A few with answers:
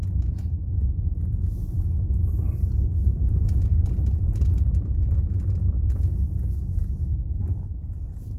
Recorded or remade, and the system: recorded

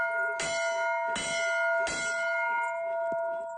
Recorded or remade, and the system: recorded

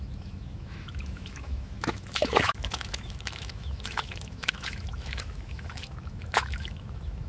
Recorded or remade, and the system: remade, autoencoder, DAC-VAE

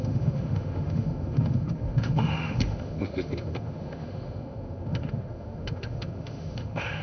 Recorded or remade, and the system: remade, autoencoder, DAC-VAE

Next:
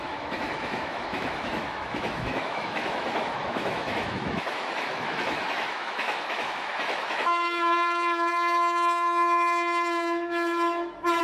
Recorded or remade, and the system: remade, autoencoder, DAC-VAE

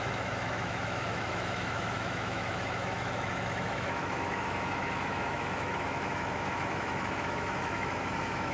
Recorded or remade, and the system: remade, autoencoder, DAC-VAE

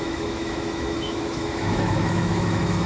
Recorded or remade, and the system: remade, autoencoder, DAC-VAE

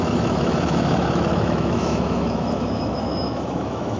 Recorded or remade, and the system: remade, autoencoder, DAC-VAE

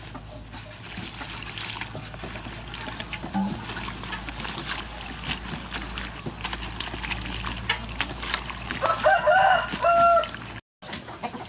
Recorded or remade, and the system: recorded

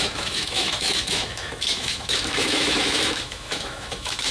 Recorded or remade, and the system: remade, autoencoder, DAC-VAE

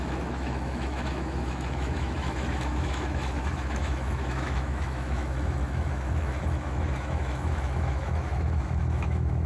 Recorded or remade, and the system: remade, autoencoder, DAC-VAE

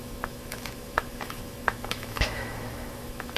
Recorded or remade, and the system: remade, autoencoder, DAC-VAE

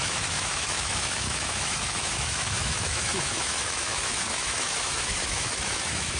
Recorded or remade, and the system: remade, autoencoder, DAC-VAE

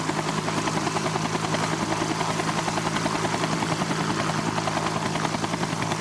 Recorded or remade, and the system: recorded